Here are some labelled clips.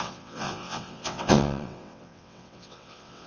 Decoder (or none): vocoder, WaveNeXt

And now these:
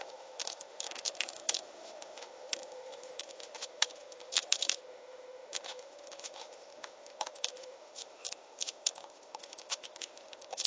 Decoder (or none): autoencoder, DAC-VAE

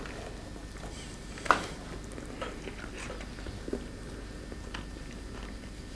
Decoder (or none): none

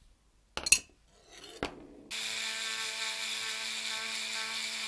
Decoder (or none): none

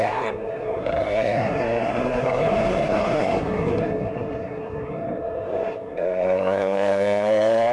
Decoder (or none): codec, SNAC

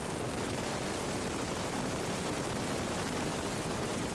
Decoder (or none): vocoder, BigVGAN v2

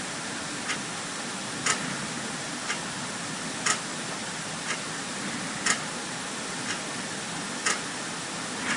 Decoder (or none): none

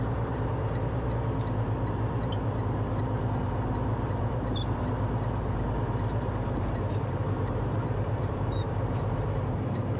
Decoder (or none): vocoder, BigVGAN v2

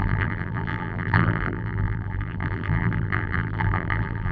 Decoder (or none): vocoder, BigVGAN v2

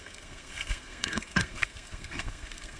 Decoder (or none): codec, SNAC